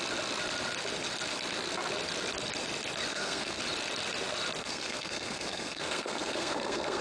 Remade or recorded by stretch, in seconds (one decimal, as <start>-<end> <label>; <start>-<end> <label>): 0.0-3.1 recorded; 3.1-3.6 remade; 3.6-4.6 recorded; 4.6-7.0 remade